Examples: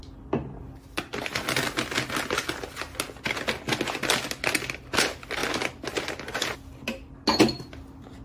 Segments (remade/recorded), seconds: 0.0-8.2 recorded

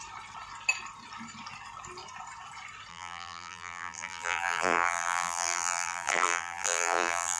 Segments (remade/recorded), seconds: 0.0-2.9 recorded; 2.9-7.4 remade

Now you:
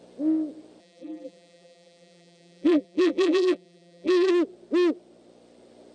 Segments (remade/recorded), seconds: 0.0-0.8 recorded; 0.8-4.3 remade; 4.3-5.9 recorded

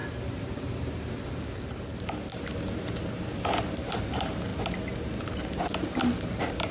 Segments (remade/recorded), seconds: 0.0-2.0 remade; 2.0-6.7 recorded